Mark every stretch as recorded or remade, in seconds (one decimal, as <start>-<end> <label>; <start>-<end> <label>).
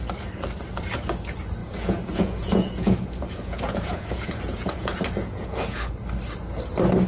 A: 0.0-1.6 recorded; 1.6-5.9 remade; 5.9-7.1 recorded